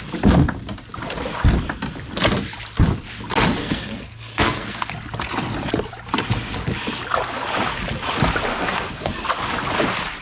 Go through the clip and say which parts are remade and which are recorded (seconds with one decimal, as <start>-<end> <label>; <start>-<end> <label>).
0.0-3.6 recorded; 3.6-4.9 remade; 4.9-8.5 recorded; 8.5-9.3 remade; 9.3-10.2 recorded